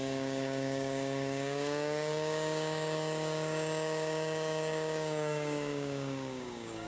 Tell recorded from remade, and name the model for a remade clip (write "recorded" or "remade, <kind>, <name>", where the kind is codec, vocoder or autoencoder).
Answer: remade, codec, DAC